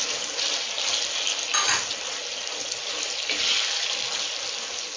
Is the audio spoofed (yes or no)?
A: no